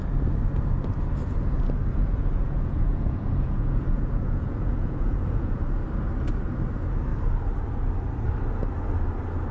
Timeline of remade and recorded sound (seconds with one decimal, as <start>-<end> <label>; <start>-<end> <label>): 0.0-1.9 recorded; 1.9-5.8 remade; 5.8-9.5 recorded

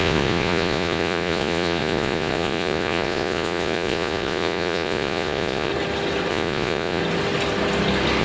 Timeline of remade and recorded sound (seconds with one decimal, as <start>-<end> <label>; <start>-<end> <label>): 0.0-5.7 remade; 5.7-6.3 recorded; 6.3-7.0 remade; 7.0-8.2 recorded

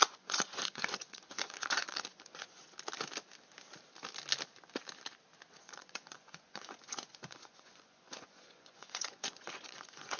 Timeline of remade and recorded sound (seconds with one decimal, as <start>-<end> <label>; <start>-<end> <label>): 0.0-2.6 remade; 2.6-5.6 recorded; 5.6-10.2 remade

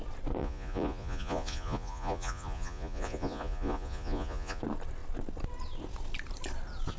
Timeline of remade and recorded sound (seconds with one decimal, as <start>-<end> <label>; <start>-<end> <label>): 0.0-0.4 recorded; 0.4-4.6 remade; 4.6-7.0 recorded

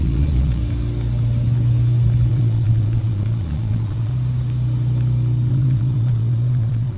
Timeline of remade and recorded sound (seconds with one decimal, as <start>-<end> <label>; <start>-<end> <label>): 0.0-0.6 remade; 0.6-2.3 recorded; 2.3-4.1 remade; 4.1-5.5 recorded; 5.5-7.0 remade

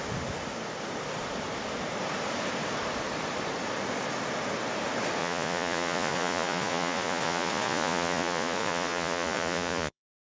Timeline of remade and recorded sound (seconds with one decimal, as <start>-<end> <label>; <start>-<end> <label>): 0.0-5.2 recorded; 5.2-10.4 remade

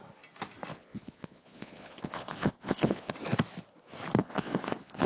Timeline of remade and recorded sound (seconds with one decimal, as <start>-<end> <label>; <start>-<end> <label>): 0.0-0.7 recorded; 0.7-3.1 remade; 3.1-4.2 recorded; 4.2-5.1 remade